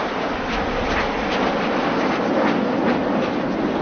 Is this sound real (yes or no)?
yes